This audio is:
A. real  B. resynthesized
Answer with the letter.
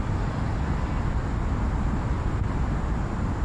A